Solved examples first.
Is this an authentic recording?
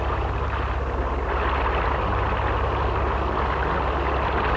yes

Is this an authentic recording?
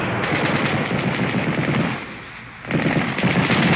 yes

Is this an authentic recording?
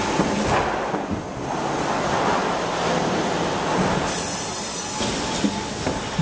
yes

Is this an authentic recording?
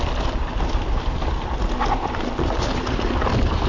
yes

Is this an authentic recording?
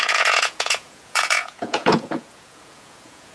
no